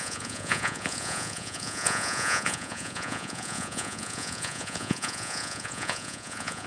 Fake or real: fake